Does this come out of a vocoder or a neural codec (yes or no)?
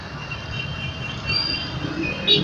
no